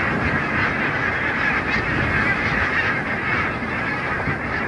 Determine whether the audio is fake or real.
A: real